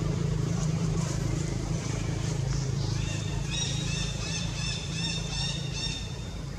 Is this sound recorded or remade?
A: remade